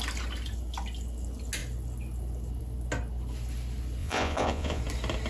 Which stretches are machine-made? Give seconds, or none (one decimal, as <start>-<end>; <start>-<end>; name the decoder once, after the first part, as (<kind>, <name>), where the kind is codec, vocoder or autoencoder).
4.0-4.8 (vocoder, Vocos)